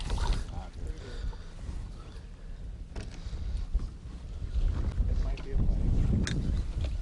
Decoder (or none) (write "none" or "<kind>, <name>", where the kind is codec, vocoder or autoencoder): none